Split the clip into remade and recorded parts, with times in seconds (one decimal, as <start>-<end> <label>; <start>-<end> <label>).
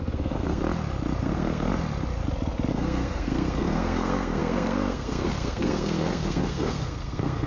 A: 0.0-0.6 remade; 0.6-1.2 recorded; 1.2-1.7 remade; 1.7-2.7 recorded; 2.7-7.5 remade